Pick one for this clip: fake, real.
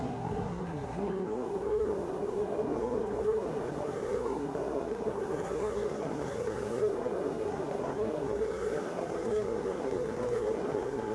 fake